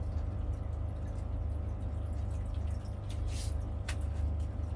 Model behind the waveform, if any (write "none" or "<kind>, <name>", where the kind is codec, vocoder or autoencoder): none